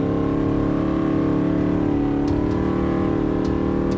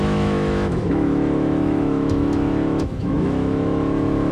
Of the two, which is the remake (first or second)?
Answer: second